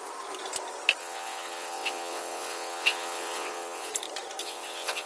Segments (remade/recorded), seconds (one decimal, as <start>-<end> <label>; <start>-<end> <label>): 0.0-1.0 recorded; 1.0-3.9 remade; 3.9-4.4 recorded; 4.4-5.1 remade